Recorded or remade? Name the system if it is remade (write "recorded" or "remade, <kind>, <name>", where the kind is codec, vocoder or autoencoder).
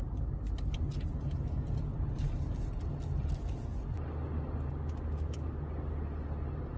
recorded